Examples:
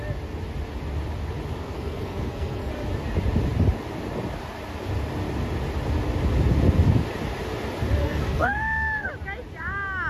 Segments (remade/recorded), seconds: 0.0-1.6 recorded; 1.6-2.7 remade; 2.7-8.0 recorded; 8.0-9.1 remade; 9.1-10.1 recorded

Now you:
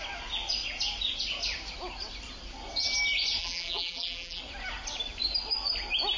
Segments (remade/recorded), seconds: 0.0-3.4 recorded; 3.4-4.4 remade; 4.4-6.2 recorded

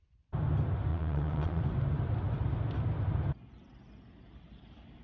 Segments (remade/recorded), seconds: 0.0-0.9 recorded; 0.9-1.6 remade; 1.6-5.0 recorded

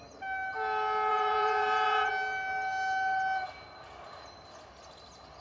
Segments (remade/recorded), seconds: 0.0-1.1 recorded; 1.1-2.1 remade; 2.1-5.4 recorded

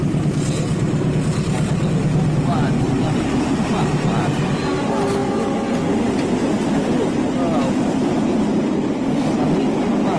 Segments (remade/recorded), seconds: 0.0-10.2 recorded

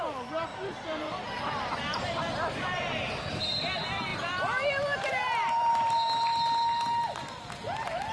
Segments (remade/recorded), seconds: 0.0-0.5 recorded; 0.5-3.6 remade; 3.6-4.1 recorded; 4.1-5.7 remade; 5.7-8.1 recorded

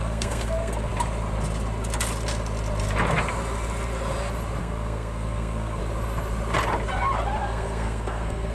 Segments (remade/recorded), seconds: 0.0-0.9 remade; 0.9-4.6 recorded; 4.6-5.8 remade; 5.8-7.4 recorded; 7.4-8.5 remade

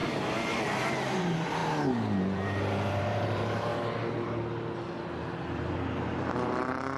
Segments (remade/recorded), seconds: 0.0-3.7 remade; 3.7-5.4 recorded; 5.4-7.0 remade